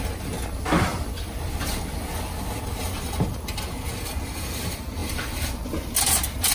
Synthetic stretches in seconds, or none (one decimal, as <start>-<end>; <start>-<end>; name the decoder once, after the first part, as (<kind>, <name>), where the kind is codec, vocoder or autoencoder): none